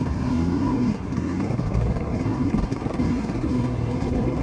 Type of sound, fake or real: fake